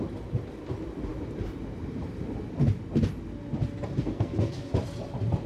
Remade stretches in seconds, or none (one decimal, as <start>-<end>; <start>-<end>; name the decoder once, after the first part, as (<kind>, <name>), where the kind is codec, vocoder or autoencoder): 4.0-4.7 (codec, SNAC)